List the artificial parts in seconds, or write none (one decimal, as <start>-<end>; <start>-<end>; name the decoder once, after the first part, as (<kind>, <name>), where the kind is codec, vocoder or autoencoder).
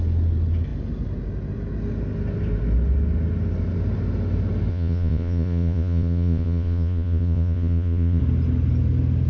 4.7-8.2 (vocoder, Vocos)